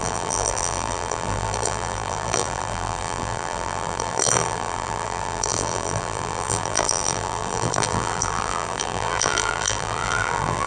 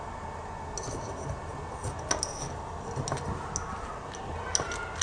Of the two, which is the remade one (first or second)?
first